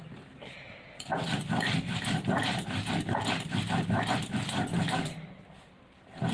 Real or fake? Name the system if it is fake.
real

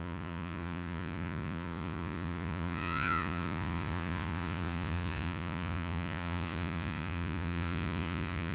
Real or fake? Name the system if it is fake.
fake, vocoder, Vocos